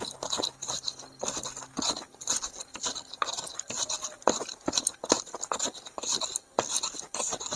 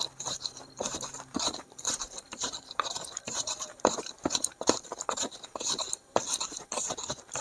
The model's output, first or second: second